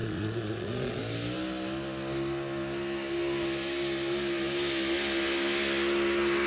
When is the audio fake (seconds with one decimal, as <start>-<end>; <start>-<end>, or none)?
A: 0.0-1.0